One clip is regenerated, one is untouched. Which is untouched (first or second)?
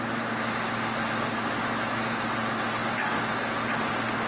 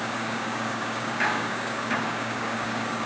first